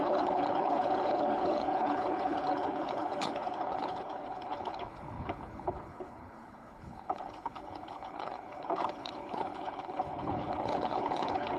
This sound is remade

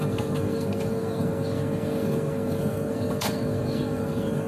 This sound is remade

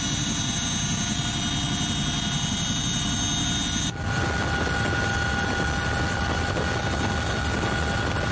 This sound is recorded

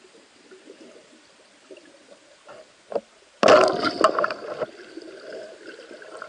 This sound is recorded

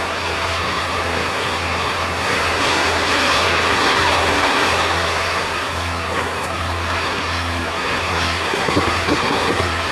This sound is remade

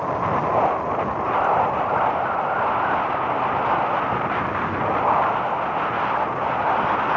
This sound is recorded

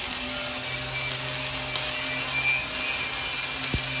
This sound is recorded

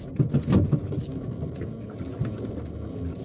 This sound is recorded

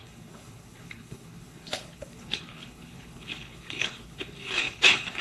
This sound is remade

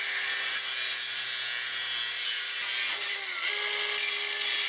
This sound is recorded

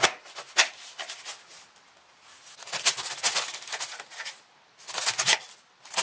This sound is recorded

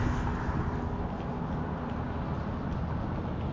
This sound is recorded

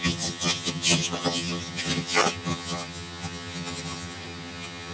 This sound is remade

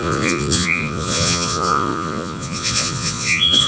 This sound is remade